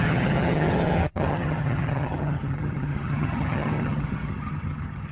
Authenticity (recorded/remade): remade